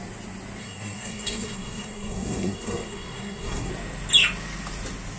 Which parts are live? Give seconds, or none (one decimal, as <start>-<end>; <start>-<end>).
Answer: 0.0-0.6; 3.7-5.2